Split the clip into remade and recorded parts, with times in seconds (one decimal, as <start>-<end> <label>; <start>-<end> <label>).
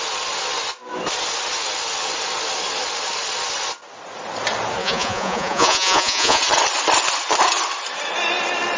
0.0-4.8 recorded; 4.8-6.4 remade; 6.4-8.8 recorded